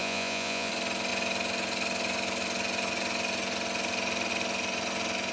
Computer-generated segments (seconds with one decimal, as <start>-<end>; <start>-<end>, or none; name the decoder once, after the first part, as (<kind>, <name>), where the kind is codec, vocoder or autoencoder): 0.0-0.7 (vocoder, Vocos)

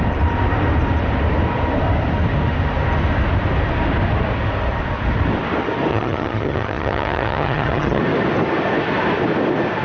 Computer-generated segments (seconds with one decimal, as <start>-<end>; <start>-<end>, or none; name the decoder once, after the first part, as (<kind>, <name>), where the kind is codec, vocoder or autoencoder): 5.9-8.0 (vocoder, HiFi-GAN)

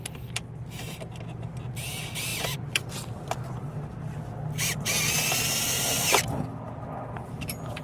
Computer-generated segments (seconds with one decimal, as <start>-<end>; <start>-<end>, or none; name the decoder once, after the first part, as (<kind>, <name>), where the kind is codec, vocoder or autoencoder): none

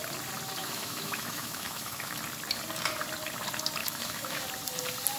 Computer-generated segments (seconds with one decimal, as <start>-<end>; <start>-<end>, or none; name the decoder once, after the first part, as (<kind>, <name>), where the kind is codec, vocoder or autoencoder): 0.6-2.2 (autoencoder, DAC-VAE); 3.8-4.4